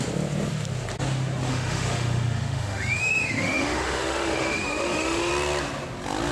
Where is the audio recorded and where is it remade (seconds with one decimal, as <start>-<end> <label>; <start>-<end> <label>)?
0.0-1.5 recorded; 1.5-5.3 remade; 5.3-6.3 recorded